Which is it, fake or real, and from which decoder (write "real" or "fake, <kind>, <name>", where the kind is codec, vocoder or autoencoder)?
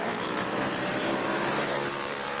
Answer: fake, vocoder, BigVGAN v2